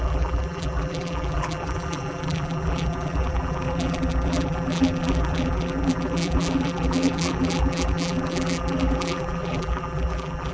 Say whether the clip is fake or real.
fake